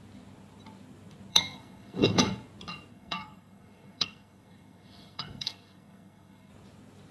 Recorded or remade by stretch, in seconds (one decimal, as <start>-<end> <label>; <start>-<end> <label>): 0.0-1.3 recorded; 1.3-2.2 remade; 2.2-2.9 recorded; 2.9-6.5 remade; 6.5-7.1 recorded